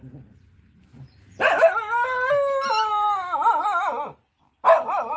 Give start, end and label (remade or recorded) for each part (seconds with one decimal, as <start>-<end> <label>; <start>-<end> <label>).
0.0-0.9 remade; 0.9-4.0 recorded; 4.0-5.2 remade